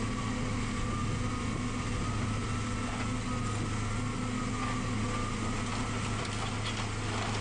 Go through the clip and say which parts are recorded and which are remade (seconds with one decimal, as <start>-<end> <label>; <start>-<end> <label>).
0.0-7.4 recorded